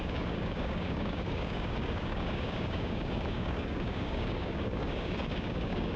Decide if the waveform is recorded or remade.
remade